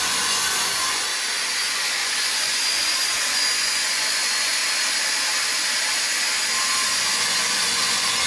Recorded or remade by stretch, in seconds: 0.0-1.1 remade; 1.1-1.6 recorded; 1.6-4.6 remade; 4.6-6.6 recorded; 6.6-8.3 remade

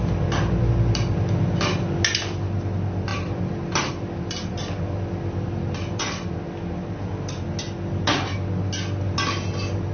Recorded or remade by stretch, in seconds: 0.0-9.9 recorded